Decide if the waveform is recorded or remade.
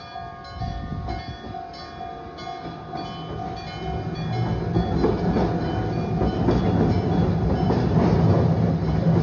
recorded